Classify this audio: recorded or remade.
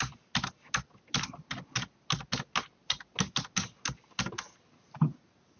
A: recorded